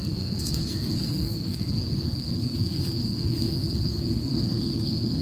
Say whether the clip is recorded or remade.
remade